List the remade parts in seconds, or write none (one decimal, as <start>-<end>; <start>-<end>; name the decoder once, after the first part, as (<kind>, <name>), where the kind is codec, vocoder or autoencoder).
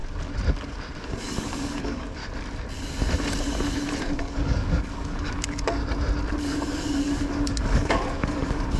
1.0-2.2 (codec, DAC); 4.0-5.8; 6.4-8.8